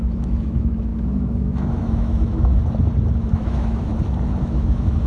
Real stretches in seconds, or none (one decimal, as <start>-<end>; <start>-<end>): 2.6-3.2; 3.9-4.4